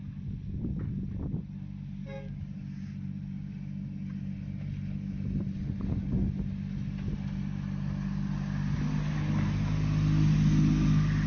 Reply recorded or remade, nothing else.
recorded